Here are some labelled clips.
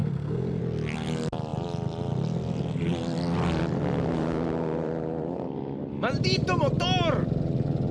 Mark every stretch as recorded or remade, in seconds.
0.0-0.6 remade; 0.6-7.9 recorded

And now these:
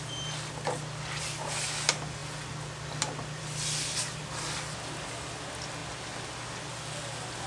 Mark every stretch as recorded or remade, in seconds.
0.0-7.5 recorded

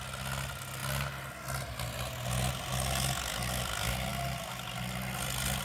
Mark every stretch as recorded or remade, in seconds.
0.0-5.6 recorded

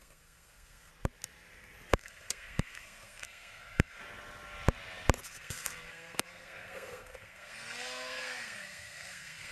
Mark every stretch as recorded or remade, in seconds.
0.0-0.9 remade; 0.9-1.9 recorded; 1.9-4.0 remade; 4.0-5.2 recorded; 5.2-9.5 remade